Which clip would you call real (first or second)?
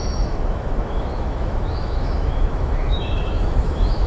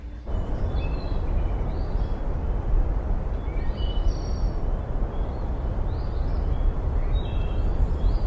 second